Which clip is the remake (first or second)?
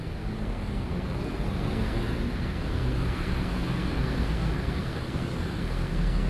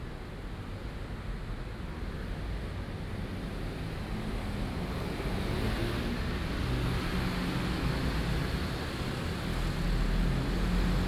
first